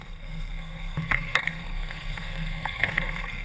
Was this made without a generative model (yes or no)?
no